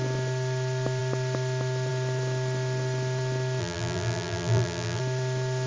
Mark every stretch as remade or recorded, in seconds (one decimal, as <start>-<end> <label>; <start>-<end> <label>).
0.0-3.6 recorded; 3.6-5.0 remade; 5.0-5.7 recorded